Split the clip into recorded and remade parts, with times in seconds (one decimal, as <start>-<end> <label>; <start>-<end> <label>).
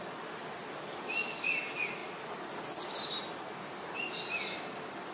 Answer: 0.0-5.1 recorded